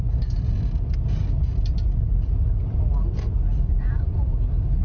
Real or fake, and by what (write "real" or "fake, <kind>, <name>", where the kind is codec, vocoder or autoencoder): real